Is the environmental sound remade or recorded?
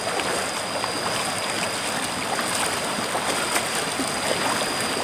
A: recorded